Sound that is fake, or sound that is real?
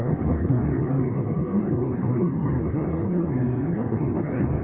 fake